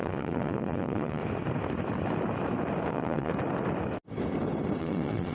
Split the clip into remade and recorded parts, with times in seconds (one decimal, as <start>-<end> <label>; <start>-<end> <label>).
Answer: 0.0-1.2 remade; 1.2-2.9 recorded; 2.9-3.3 remade; 3.3-4.8 recorded; 4.8-5.3 remade